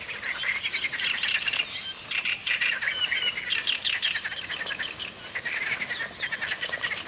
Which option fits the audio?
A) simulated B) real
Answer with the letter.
B